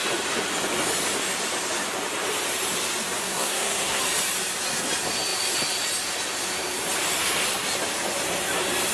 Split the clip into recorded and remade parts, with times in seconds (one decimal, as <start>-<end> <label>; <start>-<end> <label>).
0.0-3.2 recorded; 3.2-4.0 remade; 4.0-8.9 recorded